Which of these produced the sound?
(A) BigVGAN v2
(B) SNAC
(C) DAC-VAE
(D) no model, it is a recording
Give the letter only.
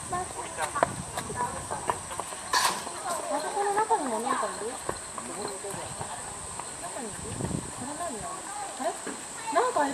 D